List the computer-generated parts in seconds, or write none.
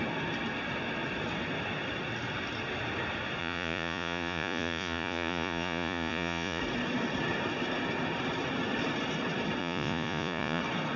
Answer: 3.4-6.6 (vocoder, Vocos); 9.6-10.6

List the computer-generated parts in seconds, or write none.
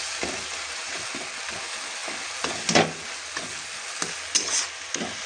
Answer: 0.5-1.1 (vocoder, BigVGAN v2)